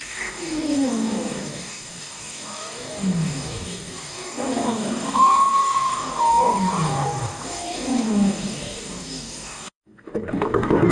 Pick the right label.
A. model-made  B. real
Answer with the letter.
A